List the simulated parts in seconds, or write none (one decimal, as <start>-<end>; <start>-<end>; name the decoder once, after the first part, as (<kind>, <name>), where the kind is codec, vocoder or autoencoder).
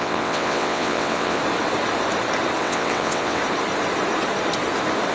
0.0-1.4 (vocoder, WaveNeXt); 2.6-3.4